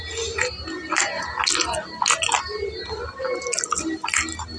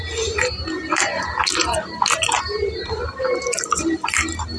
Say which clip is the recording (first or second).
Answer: first